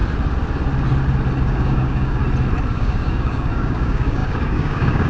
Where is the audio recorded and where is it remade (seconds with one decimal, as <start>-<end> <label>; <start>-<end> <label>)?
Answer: 0.0-1.4 recorded; 1.4-2.2 remade; 2.2-2.7 recorded; 2.7-5.1 remade